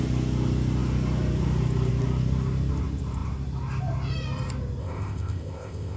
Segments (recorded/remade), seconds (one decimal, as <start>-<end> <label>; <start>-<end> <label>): 0.0-4.8 recorded; 4.8-6.0 remade